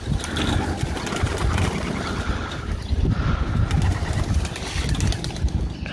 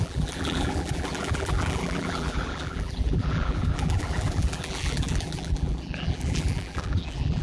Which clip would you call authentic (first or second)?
first